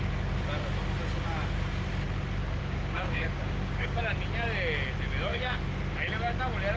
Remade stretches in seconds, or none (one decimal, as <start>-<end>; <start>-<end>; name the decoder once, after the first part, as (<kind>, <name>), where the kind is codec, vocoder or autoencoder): 2.4-4.0 (codec, DAC); 5.3-6.1